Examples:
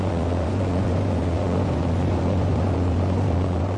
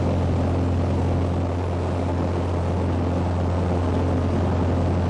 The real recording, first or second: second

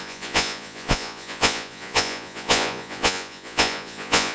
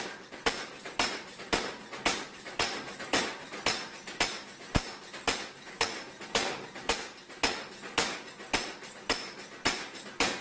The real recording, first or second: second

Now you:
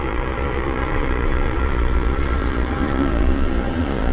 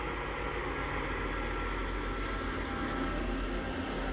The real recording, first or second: second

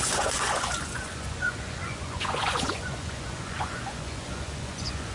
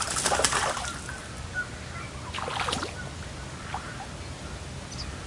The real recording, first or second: second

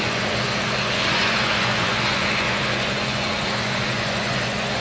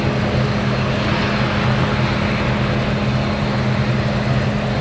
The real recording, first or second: second